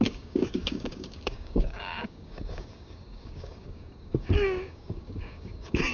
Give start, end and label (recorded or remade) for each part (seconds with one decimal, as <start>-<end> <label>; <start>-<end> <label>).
0.0-5.9 remade